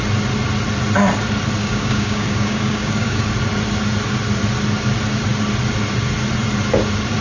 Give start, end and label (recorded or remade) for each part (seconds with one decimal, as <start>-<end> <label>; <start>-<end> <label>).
0.0-1.6 recorded; 1.6-3.3 remade; 3.3-7.2 recorded